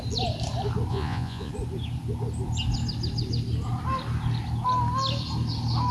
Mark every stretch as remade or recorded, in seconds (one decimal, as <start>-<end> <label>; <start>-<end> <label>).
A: 0.0-0.9 recorded; 0.9-1.5 remade; 1.5-5.9 recorded